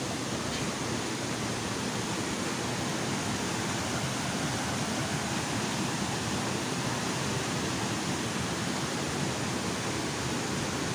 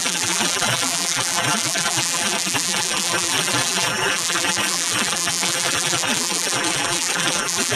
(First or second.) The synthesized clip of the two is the second